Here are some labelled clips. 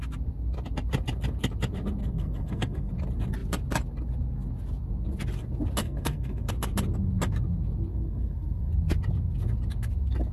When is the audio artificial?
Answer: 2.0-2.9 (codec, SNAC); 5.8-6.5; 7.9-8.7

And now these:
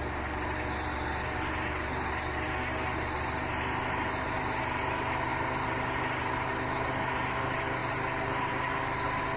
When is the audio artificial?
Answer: none

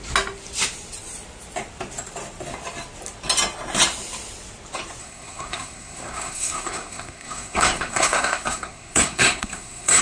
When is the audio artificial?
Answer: 5.0-10.0 (codec, SNAC)

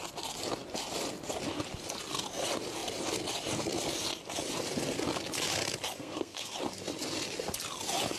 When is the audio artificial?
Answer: 6.0-6.5 (codec, SNAC)

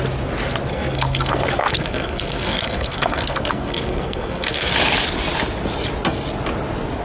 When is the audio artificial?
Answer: 0.7-4.7 (codec, SNAC)

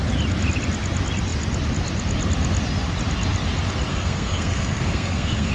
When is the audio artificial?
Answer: 3.9-5.5 (codec, SNAC)